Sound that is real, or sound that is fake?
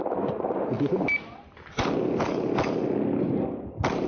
real